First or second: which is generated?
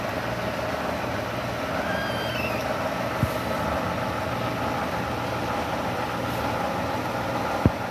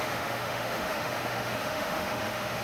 second